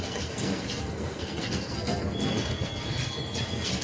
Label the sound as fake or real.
fake